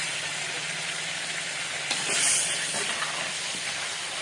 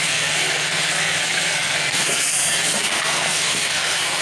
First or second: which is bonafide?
first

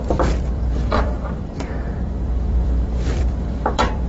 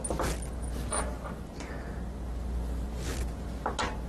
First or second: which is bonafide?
second